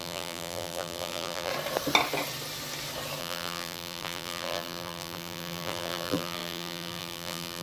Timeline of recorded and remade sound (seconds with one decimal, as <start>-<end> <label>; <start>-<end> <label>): 0.0-1.5 remade; 1.5-3.2 recorded; 3.2-7.6 remade